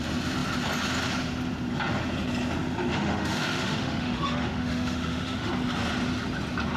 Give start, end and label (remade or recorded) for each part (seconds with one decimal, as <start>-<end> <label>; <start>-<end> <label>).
0.0-2.9 recorded; 2.9-5.5 remade; 5.5-6.8 recorded